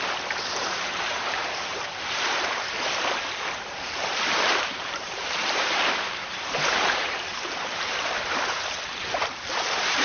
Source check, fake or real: fake